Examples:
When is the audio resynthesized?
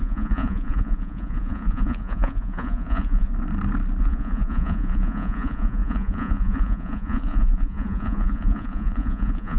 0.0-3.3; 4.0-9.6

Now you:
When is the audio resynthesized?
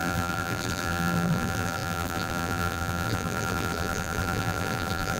0.0-5.2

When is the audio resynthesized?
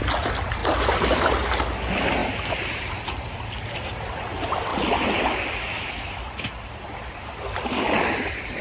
none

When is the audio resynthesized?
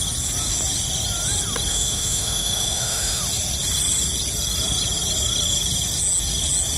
1.7-3.2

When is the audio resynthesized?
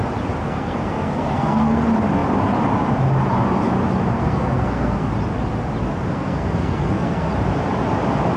0.4-1.8; 4.1-5.1; 6.1-7.3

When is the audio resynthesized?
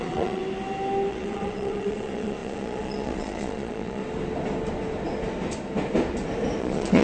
0.0-0.4; 1.1-4.0; 6.6-7.0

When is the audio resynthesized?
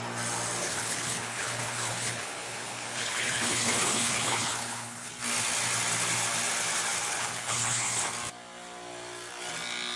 0.6-5.1; 7.1-8.1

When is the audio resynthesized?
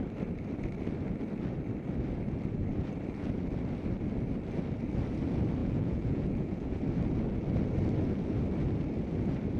5.6-6.8